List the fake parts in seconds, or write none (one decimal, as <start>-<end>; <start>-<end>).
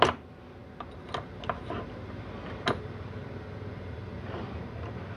none